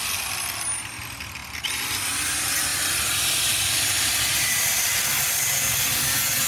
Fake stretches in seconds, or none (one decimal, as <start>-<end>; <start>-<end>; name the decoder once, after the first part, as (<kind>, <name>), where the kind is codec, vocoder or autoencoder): 2.7-4.1 (vocoder, BigVGAN v2)